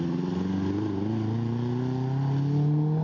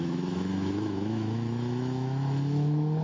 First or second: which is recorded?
first